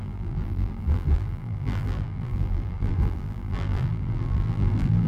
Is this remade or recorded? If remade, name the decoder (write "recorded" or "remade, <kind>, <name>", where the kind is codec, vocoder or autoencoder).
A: remade, vocoder, BigVGAN v2